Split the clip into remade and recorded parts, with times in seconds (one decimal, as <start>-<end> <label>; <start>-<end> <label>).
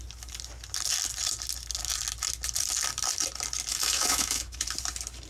0.0-3.7 recorded; 3.7-4.6 remade; 4.6-5.3 recorded